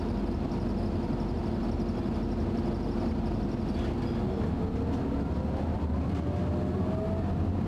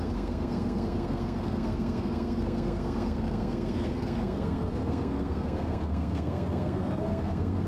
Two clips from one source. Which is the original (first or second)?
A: first